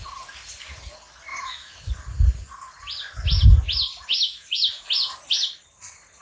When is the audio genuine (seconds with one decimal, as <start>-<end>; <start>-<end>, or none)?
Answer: 0.0-1.3; 1.9-4.1; 4.9-6.2